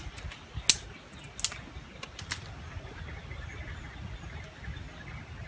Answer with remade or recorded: recorded